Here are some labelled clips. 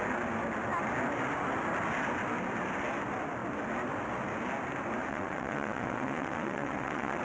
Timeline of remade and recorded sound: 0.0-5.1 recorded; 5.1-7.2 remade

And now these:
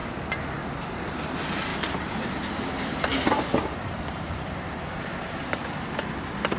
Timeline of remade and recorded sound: 0.0-1.7 recorded; 1.7-2.6 remade; 2.6-3.1 recorded; 3.1-5.6 remade; 5.6-6.6 recorded

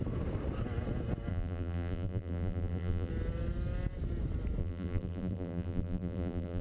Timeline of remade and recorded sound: 0.0-1.3 recorded; 1.3-3.1 remade; 3.1-4.6 recorded; 4.6-6.6 remade

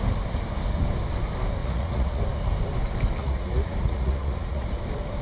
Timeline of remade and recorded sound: 0.0-1.6 recorded; 1.6-2.2 remade; 2.2-3.2 recorded; 3.2-4.7 remade; 4.7-5.2 recorded

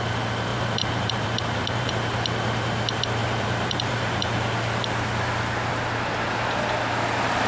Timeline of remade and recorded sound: 0.0-0.5 recorded; 0.5-1.9 remade; 1.9-3.2 recorded; 3.2-4.5 remade; 4.5-7.5 recorded

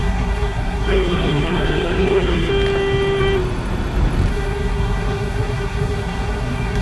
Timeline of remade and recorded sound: 0.0-2.5 remade; 2.5-4.3 recorded; 4.3-6.8 remade